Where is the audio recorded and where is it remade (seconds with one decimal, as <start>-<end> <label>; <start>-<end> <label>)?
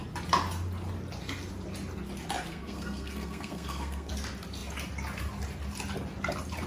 0.0-2.5 recorded; 2.5-4.1 remade; 4.1-6.7 recorded